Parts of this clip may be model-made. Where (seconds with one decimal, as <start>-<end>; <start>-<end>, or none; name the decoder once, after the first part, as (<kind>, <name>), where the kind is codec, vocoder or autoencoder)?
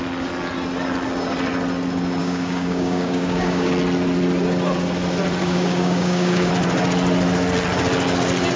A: 2.2-3.7 (codec, DAC); 5.4-6.5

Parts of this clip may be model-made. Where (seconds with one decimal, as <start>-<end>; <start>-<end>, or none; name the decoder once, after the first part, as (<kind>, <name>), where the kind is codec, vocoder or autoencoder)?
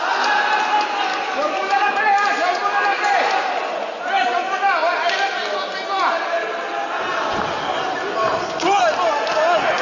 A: 1.1-1.9 (codec, DAC)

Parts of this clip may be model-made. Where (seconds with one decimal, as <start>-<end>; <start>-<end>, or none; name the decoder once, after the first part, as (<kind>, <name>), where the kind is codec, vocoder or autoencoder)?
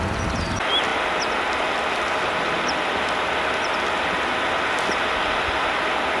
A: none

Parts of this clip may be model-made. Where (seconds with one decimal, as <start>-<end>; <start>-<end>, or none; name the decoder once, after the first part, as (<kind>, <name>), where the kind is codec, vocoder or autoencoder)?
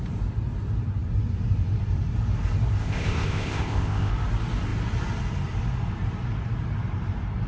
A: 2.8-4.1 (codec, ZipCodec)